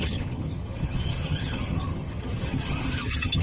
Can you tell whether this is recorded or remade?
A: remade